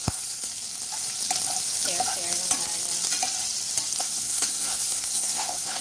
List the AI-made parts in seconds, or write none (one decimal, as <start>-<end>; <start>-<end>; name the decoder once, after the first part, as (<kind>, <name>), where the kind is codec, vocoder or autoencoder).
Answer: 0.0-0.5 (codec, SNAC); 4.0-5.8